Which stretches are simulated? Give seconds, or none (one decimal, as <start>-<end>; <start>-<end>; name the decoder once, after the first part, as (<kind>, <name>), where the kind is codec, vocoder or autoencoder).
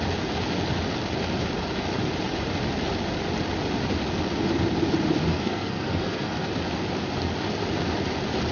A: 5.3-6.5 (codec, SNAC)